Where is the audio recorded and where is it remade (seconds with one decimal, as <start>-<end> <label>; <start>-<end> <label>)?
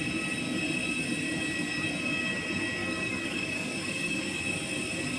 0.0-2.8 recorded; 2.8-4.4 remade; 4.4-5.2 recorded